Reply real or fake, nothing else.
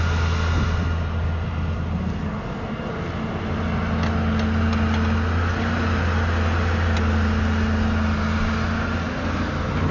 real